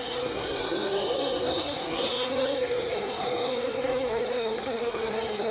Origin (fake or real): fake